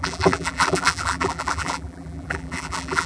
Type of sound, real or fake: fake